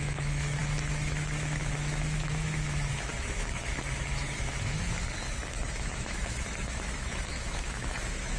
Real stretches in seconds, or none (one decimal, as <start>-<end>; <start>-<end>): none